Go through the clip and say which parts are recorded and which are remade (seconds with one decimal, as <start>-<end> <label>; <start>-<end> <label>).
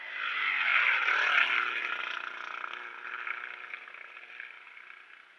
0.0-0.7 recorded; 0.7-2.0 remade; 2.0-5.4 recorded